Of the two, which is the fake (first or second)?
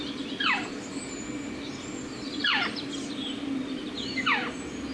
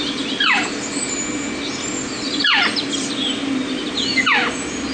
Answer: first